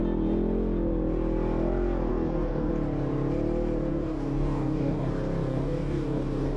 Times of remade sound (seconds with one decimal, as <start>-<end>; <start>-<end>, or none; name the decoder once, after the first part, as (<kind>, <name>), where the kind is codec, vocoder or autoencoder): 2.1-2.7 (codec, DAC); 3.9-5.1; 5.5-6.6